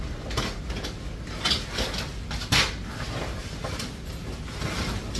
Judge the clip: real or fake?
real